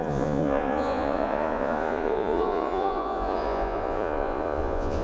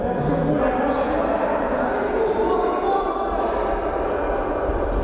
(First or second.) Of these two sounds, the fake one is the first